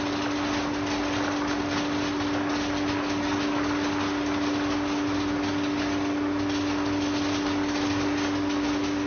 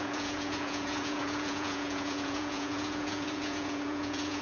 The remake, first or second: second